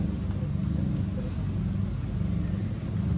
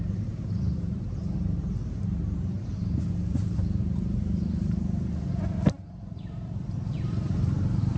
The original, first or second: first